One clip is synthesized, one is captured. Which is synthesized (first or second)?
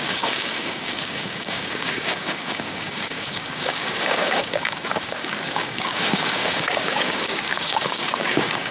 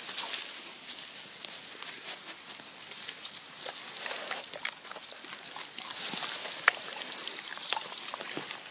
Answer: first